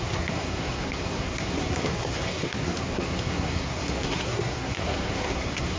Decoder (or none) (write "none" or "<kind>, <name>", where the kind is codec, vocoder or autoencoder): codec, SNAC